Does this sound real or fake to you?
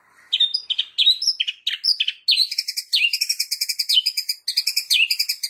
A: real